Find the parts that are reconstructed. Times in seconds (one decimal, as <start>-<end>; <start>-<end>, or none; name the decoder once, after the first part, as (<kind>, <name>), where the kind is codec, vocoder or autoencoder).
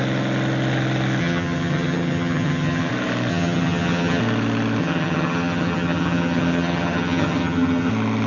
1.2-2.9 (vocoder, HiFi-GAN); 3.3-4.2; 4.8-7.9